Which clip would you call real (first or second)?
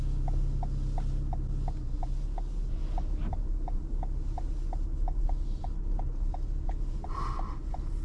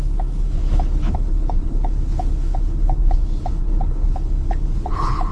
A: first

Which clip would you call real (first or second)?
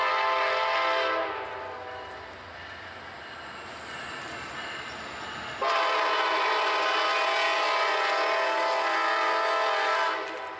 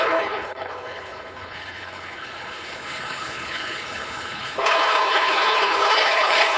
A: first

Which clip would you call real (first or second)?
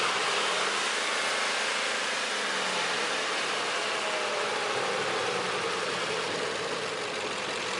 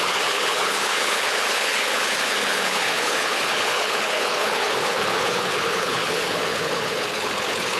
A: first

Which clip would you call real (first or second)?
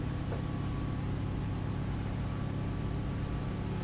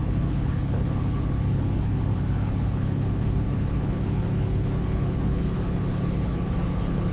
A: first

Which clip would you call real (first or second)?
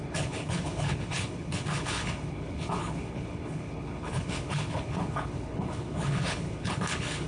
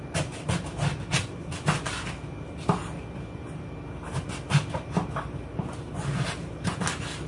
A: second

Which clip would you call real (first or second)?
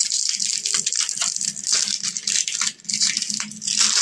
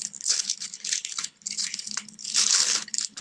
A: first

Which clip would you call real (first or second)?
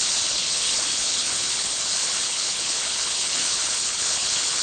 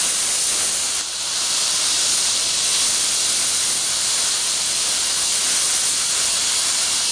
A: second